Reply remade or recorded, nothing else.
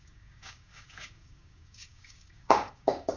remade